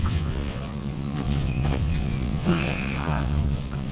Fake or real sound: fake